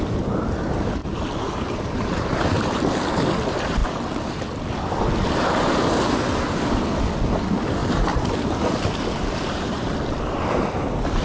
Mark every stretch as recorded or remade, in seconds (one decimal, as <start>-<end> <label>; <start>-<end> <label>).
0.0-1.0 recorded; 1.0-2.4 remade; 2.4-7.8 recorded; 7.8-9.8 remade; 9.8-11.2 recorded